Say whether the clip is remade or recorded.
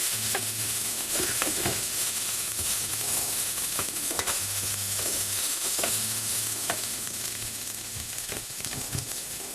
remade